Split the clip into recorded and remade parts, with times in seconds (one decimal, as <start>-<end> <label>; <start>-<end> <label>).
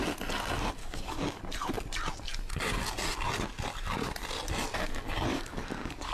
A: 0.0-0.8 recorded; 0.8-1.4 remade; 1.4-5.3 recorded; 5.3-6.1 remade